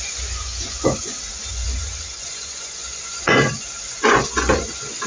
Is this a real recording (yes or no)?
no